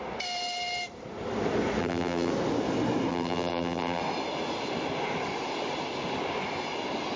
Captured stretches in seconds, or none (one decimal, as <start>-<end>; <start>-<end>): 0.0-1.8; 2.3-3.1; 4.0-7.2